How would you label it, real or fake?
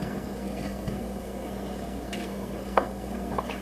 fake